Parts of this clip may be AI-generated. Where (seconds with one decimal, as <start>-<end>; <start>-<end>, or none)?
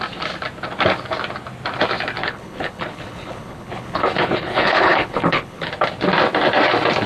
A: 2.2-5.7